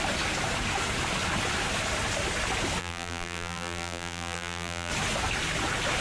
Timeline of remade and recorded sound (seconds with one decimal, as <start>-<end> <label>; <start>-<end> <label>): 0.0-2.8 recorded; 2.8-4.9 remade; 4.9-6.0 recorded